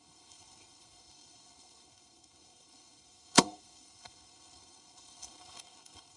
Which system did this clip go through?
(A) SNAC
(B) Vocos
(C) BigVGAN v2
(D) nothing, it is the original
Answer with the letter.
A